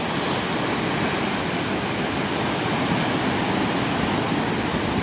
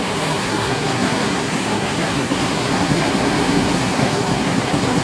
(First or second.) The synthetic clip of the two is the second